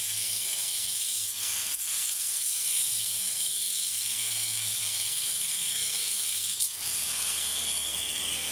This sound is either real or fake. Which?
fake